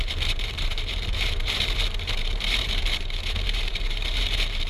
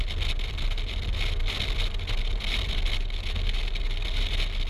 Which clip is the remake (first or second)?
first